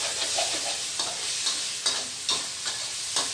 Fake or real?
real